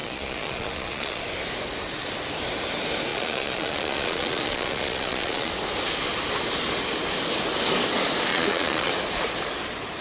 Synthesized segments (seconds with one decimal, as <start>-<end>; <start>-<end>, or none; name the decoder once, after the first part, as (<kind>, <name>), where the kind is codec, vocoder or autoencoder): 0.0-1.2 (vocoder, Vocos); 3.1-5.5; 8.3-8.9